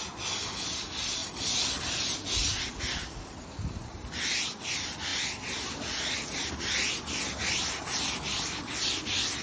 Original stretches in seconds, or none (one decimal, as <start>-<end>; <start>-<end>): 0.0-9.4